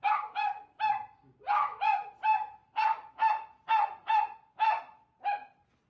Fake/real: real